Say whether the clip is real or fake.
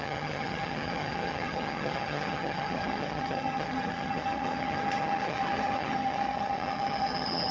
fake